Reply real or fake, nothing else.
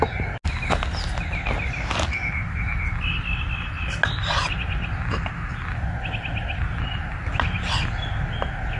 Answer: real